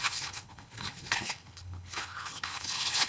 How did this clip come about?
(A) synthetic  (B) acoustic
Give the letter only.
A